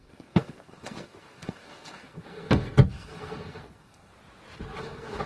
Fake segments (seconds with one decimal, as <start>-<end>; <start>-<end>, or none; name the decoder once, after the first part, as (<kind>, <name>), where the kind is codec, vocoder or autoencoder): 0.0-4.1 (codec, SNAC); 4.8-5.3